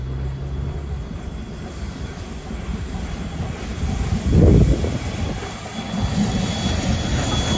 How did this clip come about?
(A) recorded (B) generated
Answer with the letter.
A